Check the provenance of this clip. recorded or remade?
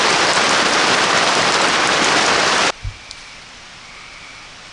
recorded